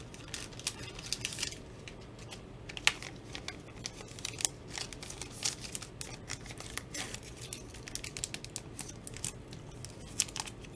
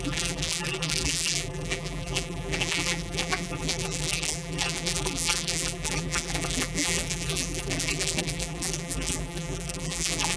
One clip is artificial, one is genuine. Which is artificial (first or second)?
second